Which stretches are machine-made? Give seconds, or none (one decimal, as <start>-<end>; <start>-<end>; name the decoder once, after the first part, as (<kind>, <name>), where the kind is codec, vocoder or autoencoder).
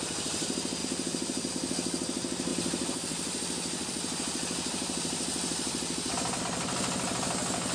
none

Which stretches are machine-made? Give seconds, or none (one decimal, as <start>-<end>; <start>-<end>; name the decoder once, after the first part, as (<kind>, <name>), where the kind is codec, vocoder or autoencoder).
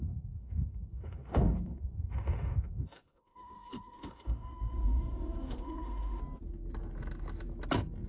0.0-6.2 (autoencoder, DAC-VAE)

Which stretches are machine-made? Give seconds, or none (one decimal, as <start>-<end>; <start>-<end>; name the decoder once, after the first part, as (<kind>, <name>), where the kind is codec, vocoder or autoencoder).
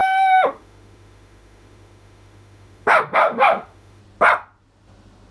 0.0-4.0 (autoencoder, DAC-VAE)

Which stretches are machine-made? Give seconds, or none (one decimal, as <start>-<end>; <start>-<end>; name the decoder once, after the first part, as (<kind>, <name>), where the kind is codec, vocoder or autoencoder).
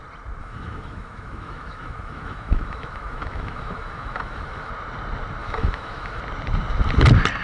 0.4-4.7 (autoencoder, DAC-VAE); 5.4-6.2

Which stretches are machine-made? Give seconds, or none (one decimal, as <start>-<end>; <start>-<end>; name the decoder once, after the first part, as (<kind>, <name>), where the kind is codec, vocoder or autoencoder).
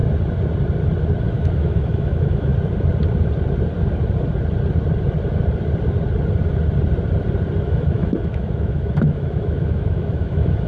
1.2-2.5 (autoencoder, DAC-VAE); 7.6-10.7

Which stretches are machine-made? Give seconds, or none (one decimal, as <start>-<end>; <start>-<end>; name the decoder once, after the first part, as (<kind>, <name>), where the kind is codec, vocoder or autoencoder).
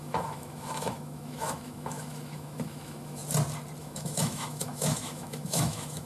0.0-3.2 (autoencoder, DAC-VAE); 3.8-6.1